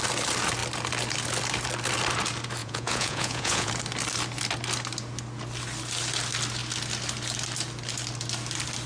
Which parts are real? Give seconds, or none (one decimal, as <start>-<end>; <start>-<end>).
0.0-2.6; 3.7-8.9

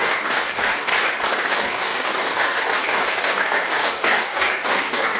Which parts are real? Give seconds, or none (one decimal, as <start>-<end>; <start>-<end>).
0.9-1.5

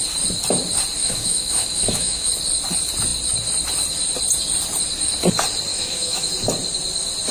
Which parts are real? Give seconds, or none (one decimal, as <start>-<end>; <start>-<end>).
0.0-1.0; 2.3-5.7; 6.3-7.3

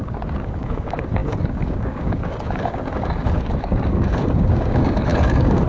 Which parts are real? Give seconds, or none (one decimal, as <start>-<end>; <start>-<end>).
none